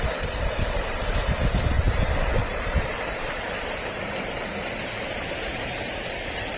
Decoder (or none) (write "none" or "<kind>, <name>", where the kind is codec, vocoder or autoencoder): vocoder, BigVGAN v2